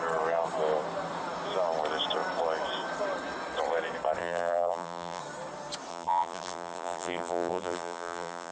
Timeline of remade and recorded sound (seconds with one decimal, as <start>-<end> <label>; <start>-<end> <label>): 0.0-4.2 recorded; 4.2-5.2 remade; 5.2-5.9 recorded; 5.9-8.5 remade